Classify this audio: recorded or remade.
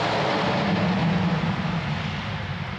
recorded